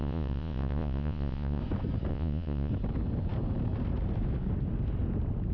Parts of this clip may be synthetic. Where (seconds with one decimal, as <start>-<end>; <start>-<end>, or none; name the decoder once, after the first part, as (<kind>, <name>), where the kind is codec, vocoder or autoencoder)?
0.0-1.6 (vocoder, Vocos); 2.1-2.7